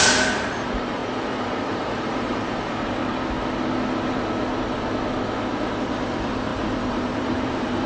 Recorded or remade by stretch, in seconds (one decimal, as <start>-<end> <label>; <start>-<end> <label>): 0.0-3.0 remade; 3.0-5.8 recorded; 5.8-7.9 remade